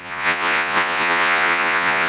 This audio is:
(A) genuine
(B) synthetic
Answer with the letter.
B